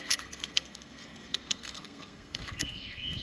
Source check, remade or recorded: remade